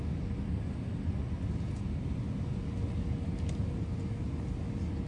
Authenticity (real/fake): real